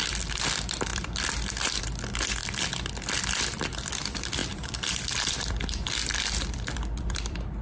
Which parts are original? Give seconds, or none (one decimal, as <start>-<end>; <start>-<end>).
none